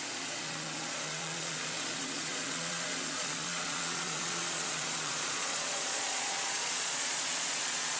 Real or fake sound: fake